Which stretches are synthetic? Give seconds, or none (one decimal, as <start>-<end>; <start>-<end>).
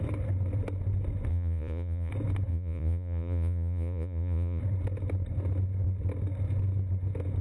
1.3-2.1; 2.5-4.6